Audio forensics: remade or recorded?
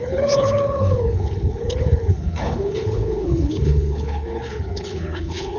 remade